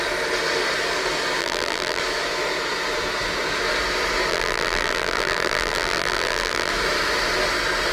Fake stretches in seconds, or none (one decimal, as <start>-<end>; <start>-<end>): 1.4-2.0; 4.3-6.7